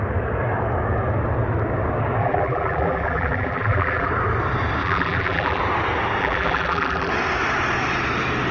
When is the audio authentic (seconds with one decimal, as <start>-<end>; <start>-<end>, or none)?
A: 0.0-2.2; 4.1-4.8; 5.6-6.2; 7.1-8.5